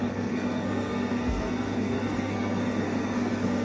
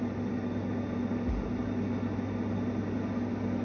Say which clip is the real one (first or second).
second